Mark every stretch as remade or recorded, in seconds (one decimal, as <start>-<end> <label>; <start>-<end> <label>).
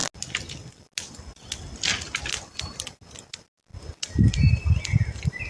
0.0-5.5 recorded